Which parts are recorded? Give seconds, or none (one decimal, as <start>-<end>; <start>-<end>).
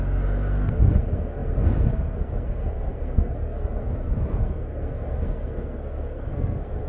none